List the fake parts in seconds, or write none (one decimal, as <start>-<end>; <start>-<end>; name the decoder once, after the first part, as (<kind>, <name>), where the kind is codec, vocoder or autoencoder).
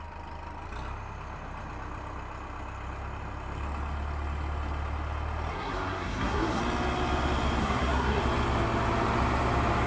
5.5-6.6 (codec, SNAC); 7.6-8.2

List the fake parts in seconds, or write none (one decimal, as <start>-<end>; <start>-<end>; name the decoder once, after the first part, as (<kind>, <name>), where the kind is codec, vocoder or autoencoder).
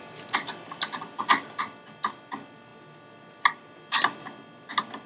none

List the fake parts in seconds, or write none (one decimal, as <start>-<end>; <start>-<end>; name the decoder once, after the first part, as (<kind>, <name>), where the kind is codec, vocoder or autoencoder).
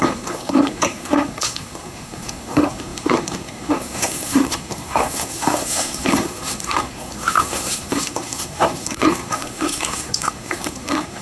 0.0-11.2 (codec, SNAC)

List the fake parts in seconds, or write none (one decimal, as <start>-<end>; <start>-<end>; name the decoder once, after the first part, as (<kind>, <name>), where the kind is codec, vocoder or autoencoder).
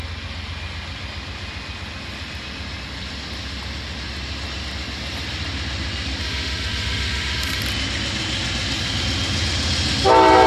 6.2-7.6 (autoencoder, DAC-VAE)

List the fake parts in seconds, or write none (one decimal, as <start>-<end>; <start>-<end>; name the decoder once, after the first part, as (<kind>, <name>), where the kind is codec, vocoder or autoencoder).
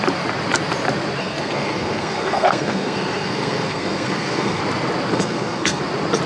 1.2-4.6 (codec, SNAC); 5.1-5.8